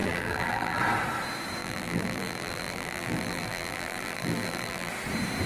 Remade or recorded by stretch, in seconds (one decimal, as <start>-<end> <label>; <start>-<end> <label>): 0.0-0.8 remade; 0.8-1.6 recorded; 1.6-4.9 remade; 4.9-5.5 recorded